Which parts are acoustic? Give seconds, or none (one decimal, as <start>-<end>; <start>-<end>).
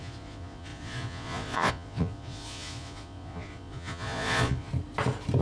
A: 4.7-5.4